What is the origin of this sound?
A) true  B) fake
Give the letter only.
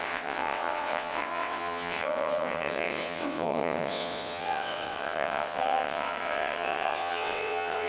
B